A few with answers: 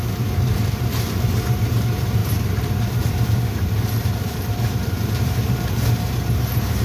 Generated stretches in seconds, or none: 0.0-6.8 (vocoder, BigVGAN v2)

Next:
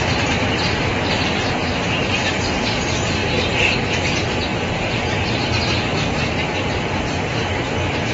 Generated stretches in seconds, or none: 0.0-3.2 (vocoder, BigVGAN v2); 4.8-7.3

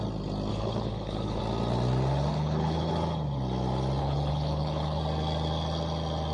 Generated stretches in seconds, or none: 0.5-1.4 (codec, HILCodec); 2.3-2.9; 4.0-5.0

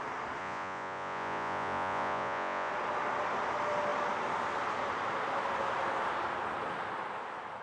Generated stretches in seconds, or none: 0.4-2.7 (vocoder, Vocos)

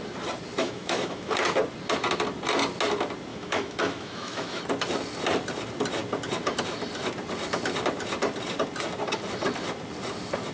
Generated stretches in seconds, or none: 0.6-1.4 (autoencoder, DAC-VAE); 3.3-4.6

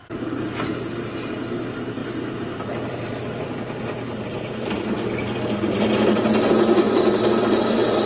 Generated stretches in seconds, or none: 2.0-6.5 (vocoder, BigVGAN v2)

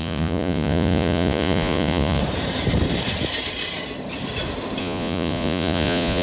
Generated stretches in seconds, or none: 0.0-2.2 (vocoder, Vocos); 4.8-6.2